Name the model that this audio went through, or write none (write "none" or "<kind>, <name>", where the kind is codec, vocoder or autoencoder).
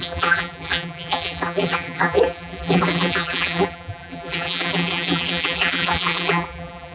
vocoder, BigVGAN v2